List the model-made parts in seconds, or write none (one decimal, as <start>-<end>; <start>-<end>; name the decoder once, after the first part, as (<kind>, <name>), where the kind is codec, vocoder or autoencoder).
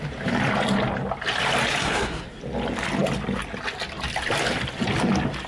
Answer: 1.8-2.4 (codec, SNAC)